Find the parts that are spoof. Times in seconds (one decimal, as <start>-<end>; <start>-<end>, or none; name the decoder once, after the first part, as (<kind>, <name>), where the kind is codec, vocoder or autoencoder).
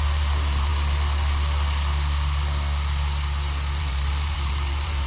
0.0-0.7 (vocoder, BigVGAN v2); 3.8-5.1